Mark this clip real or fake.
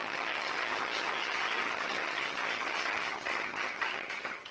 fake